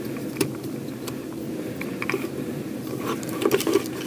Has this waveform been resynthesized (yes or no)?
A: yes